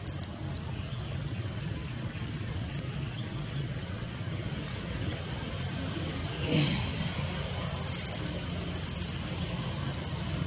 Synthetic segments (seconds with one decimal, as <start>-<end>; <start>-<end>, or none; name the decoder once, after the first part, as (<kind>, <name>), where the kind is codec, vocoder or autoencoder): 0.9-5.4 (vocoder, WaveNeXt)